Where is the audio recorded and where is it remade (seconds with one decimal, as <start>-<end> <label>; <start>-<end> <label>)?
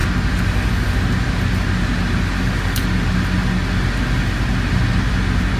0.0-5.6 recorded